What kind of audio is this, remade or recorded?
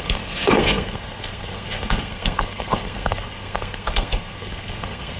remade